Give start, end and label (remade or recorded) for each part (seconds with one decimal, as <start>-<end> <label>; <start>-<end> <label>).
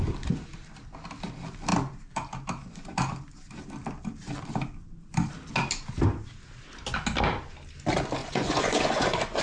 0.0-8.2 recorded; 8.2-9.4 remade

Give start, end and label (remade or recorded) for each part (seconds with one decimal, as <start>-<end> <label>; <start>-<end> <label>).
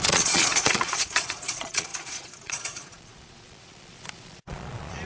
0.0-5.0 remade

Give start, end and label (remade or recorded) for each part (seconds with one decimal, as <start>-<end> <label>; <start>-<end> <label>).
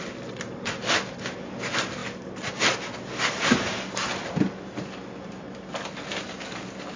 0.0-7.0 recorded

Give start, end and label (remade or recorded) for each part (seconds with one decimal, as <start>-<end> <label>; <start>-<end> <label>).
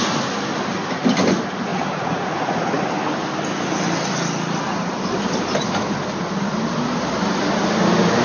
0.0-1.7 recorded; 1.7-2.8 remade; 2.8-8.2 recorded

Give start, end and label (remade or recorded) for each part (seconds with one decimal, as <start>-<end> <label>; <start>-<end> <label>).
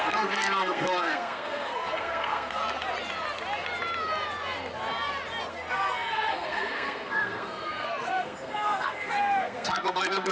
0.0-2.6 remade; 2.6-5.5 recorded; 5.5-10.3 remade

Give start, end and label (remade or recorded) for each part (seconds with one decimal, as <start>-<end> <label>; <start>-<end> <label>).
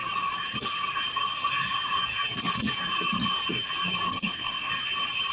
0.0-4.1 recorded; 4.1-4.7 remade; 4.7-5.3 recorded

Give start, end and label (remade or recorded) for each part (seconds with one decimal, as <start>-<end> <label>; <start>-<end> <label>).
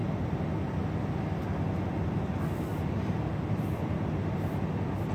0.0-5.1 recorded